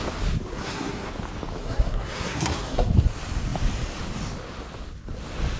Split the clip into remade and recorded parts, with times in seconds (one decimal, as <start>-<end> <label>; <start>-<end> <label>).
0.0-0.5 recorded; 0.5-1.1 remade; 1.1-1.6 recorded; 1.6-2.9 remade; 2.9-5.6 recorded